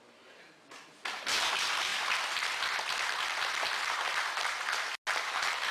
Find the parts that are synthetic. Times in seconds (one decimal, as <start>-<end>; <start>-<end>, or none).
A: none